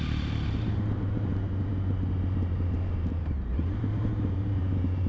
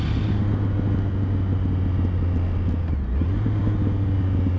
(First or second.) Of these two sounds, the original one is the second